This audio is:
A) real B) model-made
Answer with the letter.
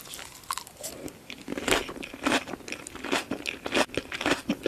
A